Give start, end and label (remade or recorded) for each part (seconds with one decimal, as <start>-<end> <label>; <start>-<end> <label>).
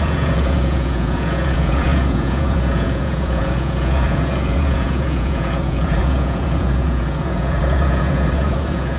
0.0-9.0 remade